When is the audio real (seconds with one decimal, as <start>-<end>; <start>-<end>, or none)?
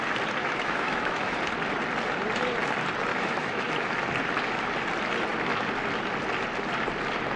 0.0-0.4; 1.4-3.1; 3.7-7.4